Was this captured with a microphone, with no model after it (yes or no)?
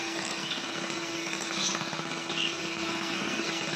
no